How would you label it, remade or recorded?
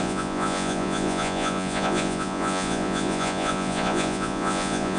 remade